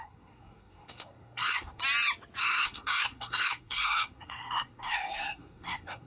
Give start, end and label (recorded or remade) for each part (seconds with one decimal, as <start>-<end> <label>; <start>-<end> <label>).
0.0-1.8 remade; 1.8-2.4 recorded; 2.4-6.1 remade